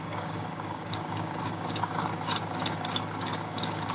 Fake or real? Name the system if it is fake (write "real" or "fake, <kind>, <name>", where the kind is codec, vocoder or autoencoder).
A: fake, codec, DAC